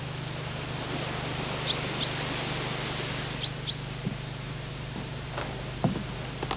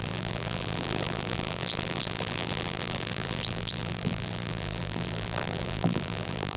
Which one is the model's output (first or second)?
second